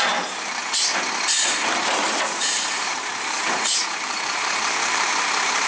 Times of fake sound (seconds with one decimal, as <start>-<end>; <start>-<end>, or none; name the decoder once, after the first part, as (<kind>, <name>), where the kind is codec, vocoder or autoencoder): 0.0-0.6 (vocoder, BigVGAN v2); 1.5-5.7